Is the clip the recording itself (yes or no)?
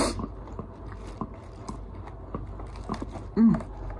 yes